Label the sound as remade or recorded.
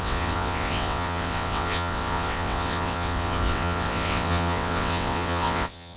remade